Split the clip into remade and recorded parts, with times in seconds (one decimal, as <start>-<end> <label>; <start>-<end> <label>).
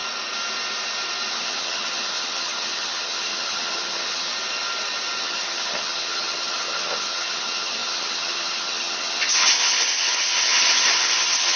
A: 0.0-1.3 recorded; 1.3-4.3 remade; 4.3-5.2 recorded; 5.2-11.6 remade